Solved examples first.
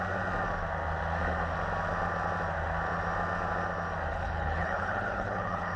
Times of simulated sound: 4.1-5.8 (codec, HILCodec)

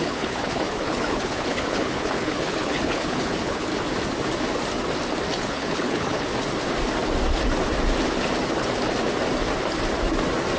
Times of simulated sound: 0.0-3.7 (codec, HILCodec); 5.4-6.3